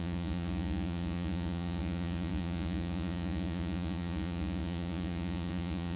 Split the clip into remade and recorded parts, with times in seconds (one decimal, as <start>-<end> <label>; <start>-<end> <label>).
0.0-6.0 remade